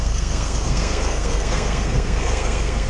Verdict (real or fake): fake